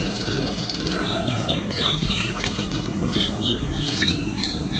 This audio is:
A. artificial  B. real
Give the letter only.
A